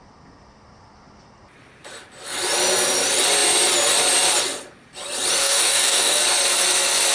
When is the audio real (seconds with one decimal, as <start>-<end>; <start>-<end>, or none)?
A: 0.0-5.4; 6.2-7.1